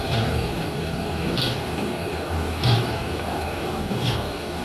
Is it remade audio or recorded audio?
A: remade